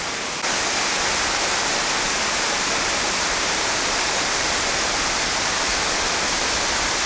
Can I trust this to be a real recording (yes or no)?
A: yes